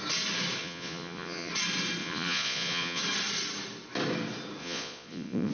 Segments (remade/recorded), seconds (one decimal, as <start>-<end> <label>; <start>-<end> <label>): 0.0-0.6 recorded; 0.6-1.5 remade; 1.5-2.0 recorded; 2.0-3.0 remade; 3.0-4.6 recorded; 4.6-5.5 remade